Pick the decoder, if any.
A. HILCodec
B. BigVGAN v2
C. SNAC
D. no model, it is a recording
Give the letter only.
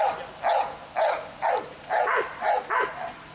D